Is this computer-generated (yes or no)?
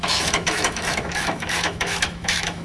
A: yes